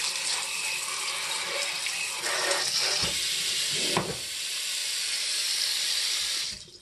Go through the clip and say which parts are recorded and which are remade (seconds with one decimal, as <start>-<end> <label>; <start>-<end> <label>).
0.0-6.8 recorded